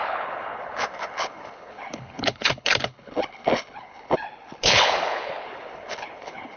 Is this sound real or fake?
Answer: fake